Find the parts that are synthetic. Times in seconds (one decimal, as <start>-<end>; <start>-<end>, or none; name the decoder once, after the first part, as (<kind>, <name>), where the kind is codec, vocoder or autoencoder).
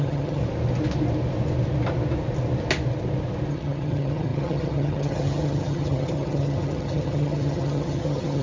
0.0-0.4 (vocoder, HiFi-GAN); 3.5-8.4